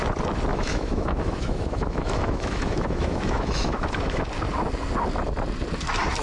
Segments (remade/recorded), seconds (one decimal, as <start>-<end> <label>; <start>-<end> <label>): 0.0-0.5 recorded; 0.5-4.2 remade; 4.2-6.2 recorded